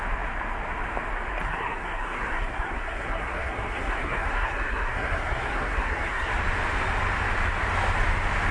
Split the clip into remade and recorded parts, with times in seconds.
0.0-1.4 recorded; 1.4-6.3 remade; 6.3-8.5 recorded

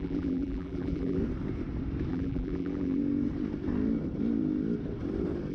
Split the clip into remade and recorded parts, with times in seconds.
0.0-1.2 remade; 1.2-2.1 recorded; 2.1-3.0 remade; 3.0-5.5 recorded